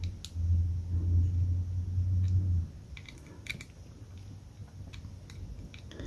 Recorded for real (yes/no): yes